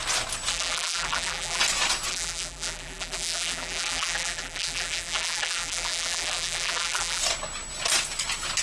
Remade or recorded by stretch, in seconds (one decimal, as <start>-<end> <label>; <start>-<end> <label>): 0.0-0.5 recorded; 0.5-1.6 remade; 1.6-2.1 recorded; 2.1-7.2 remade; 7.2-8.6 recorded